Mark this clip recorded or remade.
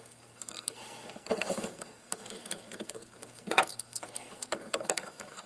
remade